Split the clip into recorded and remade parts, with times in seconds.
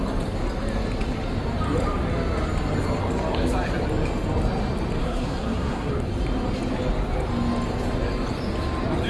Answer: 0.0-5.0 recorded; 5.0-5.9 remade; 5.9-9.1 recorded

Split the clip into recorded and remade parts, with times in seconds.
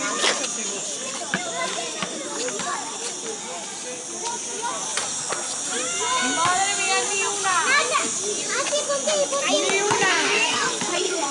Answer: 0.0-10.1 recorded; 10.1-11.3 remade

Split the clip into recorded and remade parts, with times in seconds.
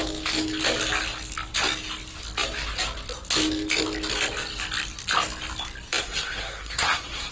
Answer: 0.0-6.0 recorded; 6.0-7.3 remade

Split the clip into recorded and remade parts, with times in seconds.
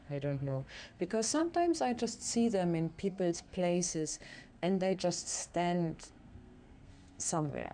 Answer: 0.0-1.4 remade; 1.4-3.0 recorded; 3.0-7.7 remade